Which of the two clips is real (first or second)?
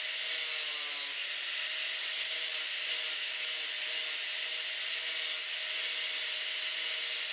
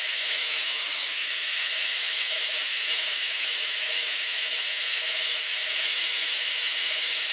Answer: first